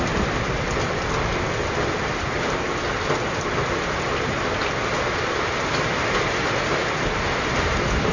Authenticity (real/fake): real